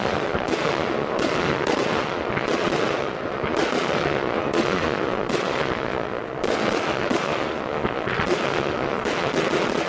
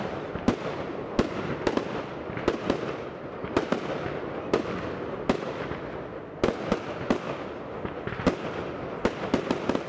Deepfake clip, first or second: first